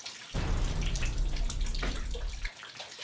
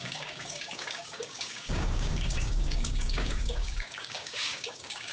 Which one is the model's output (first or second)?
second